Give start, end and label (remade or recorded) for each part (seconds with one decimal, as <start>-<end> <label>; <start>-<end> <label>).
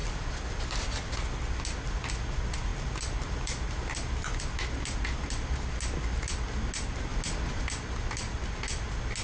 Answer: 0.0-9.2 recorded